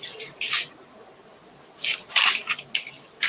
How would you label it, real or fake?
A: real